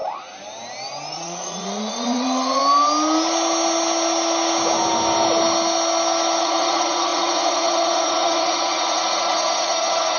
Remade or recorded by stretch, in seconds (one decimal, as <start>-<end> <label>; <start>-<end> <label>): 0.0-1.1 recorded; 1.1-2.6 remade; 2.6-6.4 recorded; 6.4-10.2 remade